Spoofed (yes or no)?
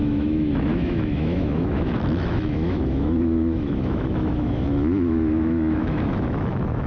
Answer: yes